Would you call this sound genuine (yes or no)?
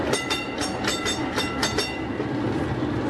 yes